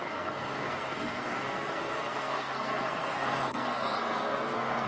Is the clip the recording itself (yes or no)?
no